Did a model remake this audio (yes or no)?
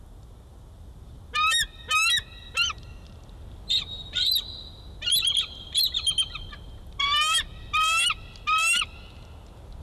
no